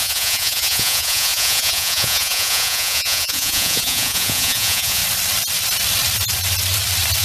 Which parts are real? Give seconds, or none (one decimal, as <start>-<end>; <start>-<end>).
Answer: 5.0-7.2